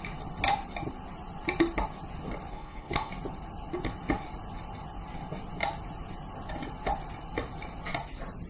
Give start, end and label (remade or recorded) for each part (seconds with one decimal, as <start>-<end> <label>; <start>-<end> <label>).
0.0-2.5 recorded; 2.5-3.1 remade; 3.1-8.5 recorded